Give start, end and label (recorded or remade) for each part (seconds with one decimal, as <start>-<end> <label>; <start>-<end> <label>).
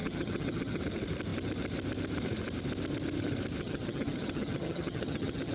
0.0-0.8 remade; 0.8-3.6 recorded; 3.6-5.5 remade